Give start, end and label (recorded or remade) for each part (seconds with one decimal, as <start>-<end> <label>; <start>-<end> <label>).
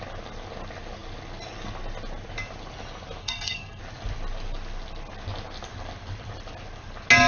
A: 0.0-3.2 recorded; 3.2-3.8 remade; 3.8-7.3 recorded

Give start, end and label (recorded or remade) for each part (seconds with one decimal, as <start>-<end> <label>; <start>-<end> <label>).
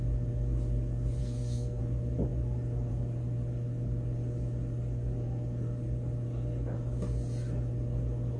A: 0.0-1.2 recorded; 1.2-1.8 remade; 1.8-8.4 recorded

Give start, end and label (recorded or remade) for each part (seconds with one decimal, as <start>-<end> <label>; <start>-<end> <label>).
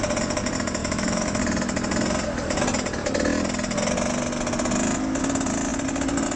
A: 0.0-0.8 recorded; 0.8-1.4 remade; 1.4-6.4 recorded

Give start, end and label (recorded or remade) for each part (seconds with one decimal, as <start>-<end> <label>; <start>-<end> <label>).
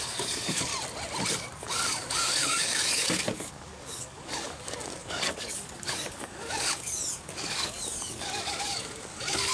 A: 0.0-0.7 remade; 0.7-1.3 recorded; 1.3-9.5 remade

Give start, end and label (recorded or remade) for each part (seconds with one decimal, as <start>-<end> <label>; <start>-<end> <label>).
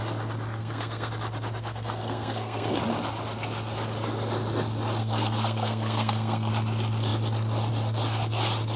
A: 0.0-0.6 recorded; 0.6-1.1 remade; 1.1-1.6 recorded; 1.6-2.7 remade; 2.7-5.0 recorded; 5.0-6.5 remade; 6.5-8.8 recorded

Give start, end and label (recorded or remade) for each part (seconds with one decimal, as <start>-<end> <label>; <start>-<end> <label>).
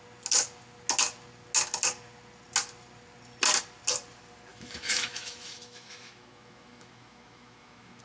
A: 0.0-4.5 recorded; 4.5-8.0 remade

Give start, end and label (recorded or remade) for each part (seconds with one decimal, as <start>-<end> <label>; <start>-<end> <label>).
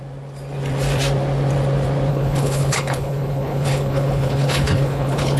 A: 0.0-2.1 recorded; 2.1-5.4 remade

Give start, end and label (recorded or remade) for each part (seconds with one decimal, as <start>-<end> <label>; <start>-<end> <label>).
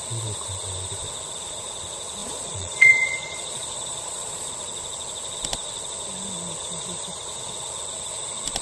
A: 0.0-2.2 recorded; 2.2-4.5 remade; 4.5-8.6 recorded